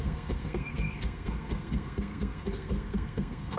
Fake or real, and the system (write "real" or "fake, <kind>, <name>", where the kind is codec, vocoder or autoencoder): fake, codec, SNAC